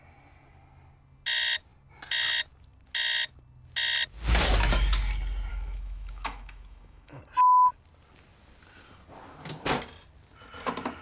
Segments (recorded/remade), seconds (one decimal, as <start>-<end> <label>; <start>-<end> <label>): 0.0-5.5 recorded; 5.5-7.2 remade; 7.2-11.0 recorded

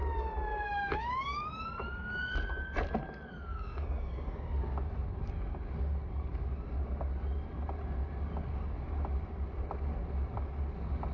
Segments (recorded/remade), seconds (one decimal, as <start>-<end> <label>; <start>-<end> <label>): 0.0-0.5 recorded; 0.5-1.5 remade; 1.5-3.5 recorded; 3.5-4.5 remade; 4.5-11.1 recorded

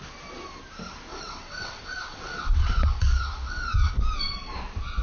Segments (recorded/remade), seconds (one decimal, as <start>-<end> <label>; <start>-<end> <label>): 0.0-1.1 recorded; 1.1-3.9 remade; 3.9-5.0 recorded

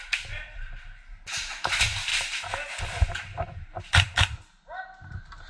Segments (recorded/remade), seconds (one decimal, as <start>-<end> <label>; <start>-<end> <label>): 0.0-5.5 recorded

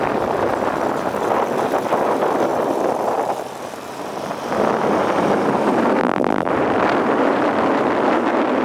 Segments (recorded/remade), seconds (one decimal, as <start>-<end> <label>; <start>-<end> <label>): 0.0-6.0 recorded; 6.0-6.5 remade; 6.5-8.6 recorded

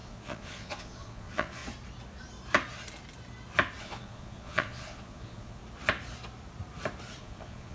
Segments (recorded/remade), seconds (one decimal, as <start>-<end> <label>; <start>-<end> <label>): 0.0-1.6 remade; 1.6-3.8 recorded; 3.8-5.6 remade; 5.6-7.2 recorded; 7.2-7.7 remade

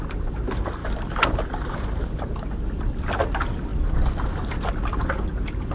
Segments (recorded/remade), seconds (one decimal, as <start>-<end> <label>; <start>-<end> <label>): 0.0-5.7 recorded

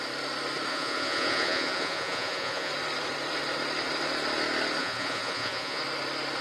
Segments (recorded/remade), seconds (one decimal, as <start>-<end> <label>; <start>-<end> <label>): 0.0-0.7 recorded; 0.7-2.7 remade; 2.7-4.8 recorded; 4.8-5.8 remade; 5.8-6.4 recorded